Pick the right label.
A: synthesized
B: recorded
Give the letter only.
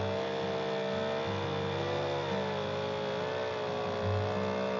B